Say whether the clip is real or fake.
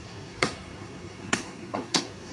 fake